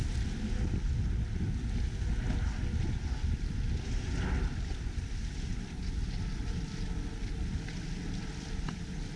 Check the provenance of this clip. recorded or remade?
recorded